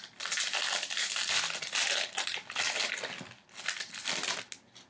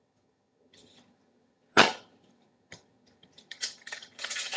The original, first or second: first